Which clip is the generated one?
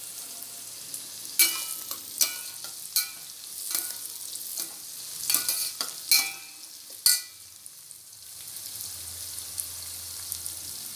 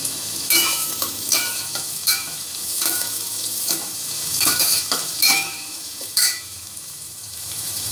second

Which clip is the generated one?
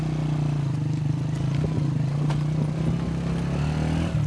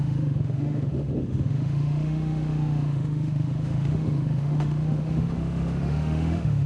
second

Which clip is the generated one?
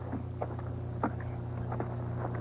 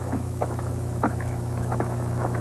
second